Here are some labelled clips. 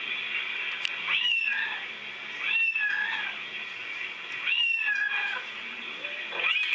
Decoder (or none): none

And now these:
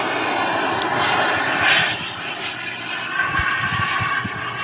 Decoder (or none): none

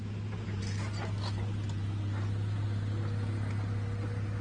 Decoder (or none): none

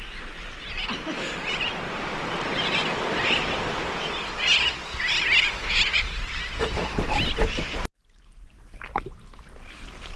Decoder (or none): none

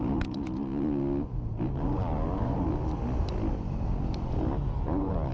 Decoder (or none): none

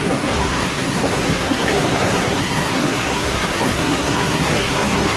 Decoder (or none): codec, SNAC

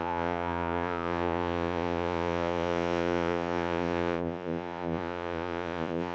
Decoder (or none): vocoder, Vocos